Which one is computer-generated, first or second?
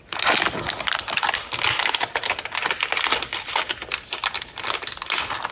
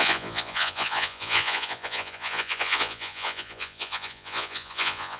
second